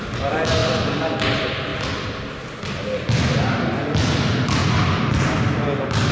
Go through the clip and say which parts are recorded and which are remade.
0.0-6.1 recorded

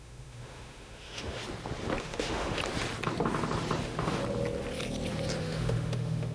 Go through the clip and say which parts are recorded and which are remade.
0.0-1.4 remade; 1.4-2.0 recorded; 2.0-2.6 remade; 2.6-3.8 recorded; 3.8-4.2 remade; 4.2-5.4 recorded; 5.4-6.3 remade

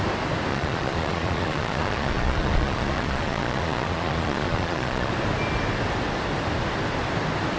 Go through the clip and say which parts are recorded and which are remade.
0.0-0.5 recorded; 0.5-5.1 remade; 5.1-7.6 recorded

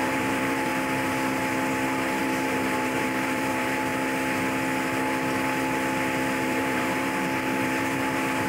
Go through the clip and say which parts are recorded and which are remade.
0.0-0.7 remade; 0.7-2.2 recorded; 2.2-3.9 remade; 3.9-6.4 recorded; 6.4-8.5 remade

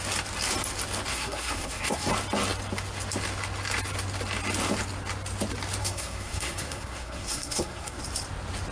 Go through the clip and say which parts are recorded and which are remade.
0.0-1.1 recorded; 1.1-2.1 remade; 2.1-5.8 recorded; 5.8-8.0 remade; 8.0-8.7 recorded

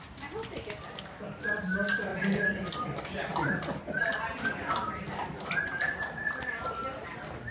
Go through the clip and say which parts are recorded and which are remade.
0.0-7.5 recorded

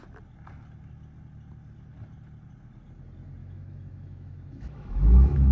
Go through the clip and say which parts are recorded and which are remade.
0.0-3.4 recorded; 3.4-5.5 remade